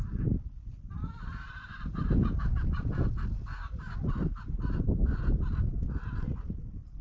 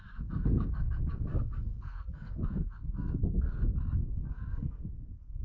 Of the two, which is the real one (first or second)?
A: first